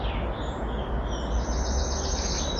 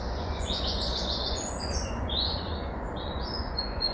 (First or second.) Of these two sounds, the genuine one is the first